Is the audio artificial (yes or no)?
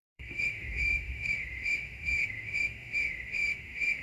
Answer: yes